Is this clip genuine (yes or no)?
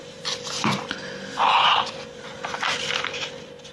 yes